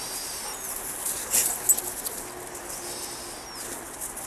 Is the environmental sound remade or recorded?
recorded